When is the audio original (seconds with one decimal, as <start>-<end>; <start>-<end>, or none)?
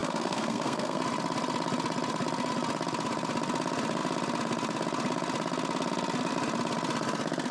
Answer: 1.0-7.5